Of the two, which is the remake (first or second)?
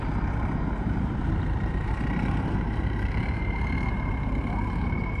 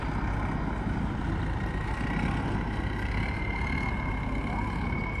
first